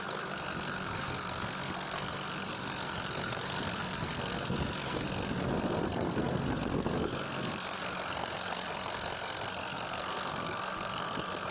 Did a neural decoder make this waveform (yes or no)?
yes